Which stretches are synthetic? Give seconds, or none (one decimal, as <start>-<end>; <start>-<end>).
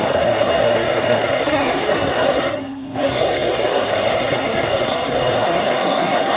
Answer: 0.0-6.4